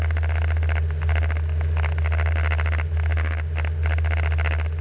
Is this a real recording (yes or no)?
yes